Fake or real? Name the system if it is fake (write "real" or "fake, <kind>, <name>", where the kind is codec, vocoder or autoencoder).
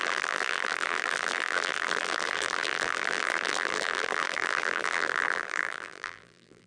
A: fake, vocoder, BigVGAN v2